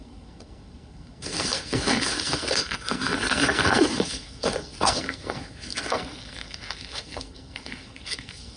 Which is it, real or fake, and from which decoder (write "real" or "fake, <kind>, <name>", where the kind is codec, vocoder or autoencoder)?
fake, codec, SNAC